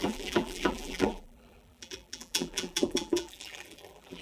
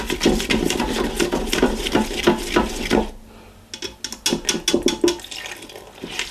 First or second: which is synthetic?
first